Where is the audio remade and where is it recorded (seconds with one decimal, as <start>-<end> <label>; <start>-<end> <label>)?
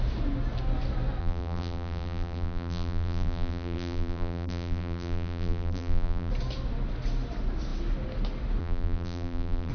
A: 0.0-1.2 recorded; 1.2-6.3 remade; 6.3-8.6 recorded; 8.6-9.7 remade